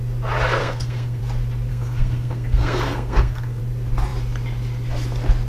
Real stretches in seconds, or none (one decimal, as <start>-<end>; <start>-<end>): 0.0-0.6; 1.2-1.7; 3.6-5.5